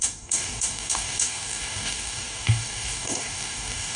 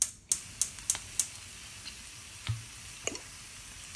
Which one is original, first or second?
second